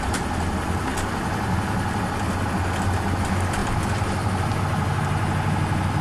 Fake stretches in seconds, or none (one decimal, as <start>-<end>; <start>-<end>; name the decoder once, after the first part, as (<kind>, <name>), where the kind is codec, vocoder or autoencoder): none